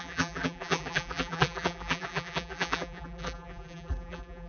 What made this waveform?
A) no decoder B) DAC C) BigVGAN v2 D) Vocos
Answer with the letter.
C